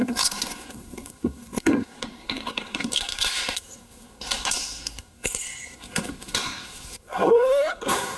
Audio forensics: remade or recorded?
remade